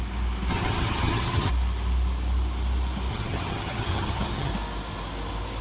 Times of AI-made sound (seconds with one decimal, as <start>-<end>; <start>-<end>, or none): 0.5-1.5; 3.1-4.5